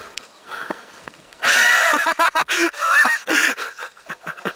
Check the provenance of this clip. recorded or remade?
remade